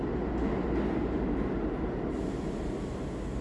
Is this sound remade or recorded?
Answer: recorded